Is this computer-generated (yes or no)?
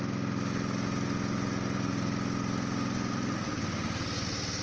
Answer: no